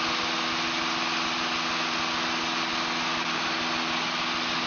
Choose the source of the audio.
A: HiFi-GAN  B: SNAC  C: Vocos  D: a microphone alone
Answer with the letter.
D